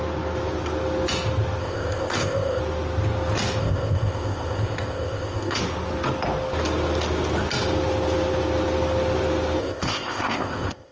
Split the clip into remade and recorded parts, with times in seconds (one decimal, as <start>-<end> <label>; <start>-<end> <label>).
0.0-1.6 recorded; 1.6-2.6 remade; 2.6-3.6 recorded; 3.6-5.6 remade; 5.6-9.6 recorded; 9.6-10.9 remade